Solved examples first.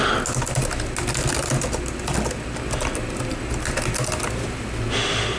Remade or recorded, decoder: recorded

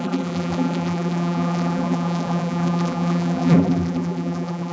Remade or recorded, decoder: remade, vocoder, BigVGAN v2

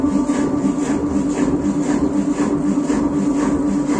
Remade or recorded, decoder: recorded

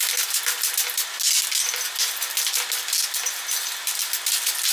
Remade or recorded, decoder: recorded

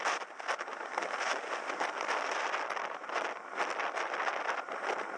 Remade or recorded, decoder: recorded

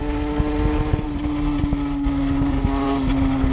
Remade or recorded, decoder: recorded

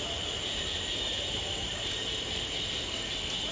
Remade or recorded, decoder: recorded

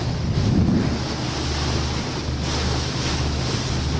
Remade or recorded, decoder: recorded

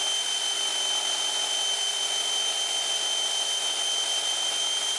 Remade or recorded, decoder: recorded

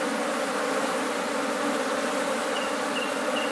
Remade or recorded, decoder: recorded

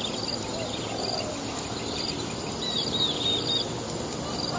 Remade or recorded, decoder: recorded